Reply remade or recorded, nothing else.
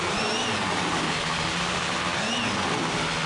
recorded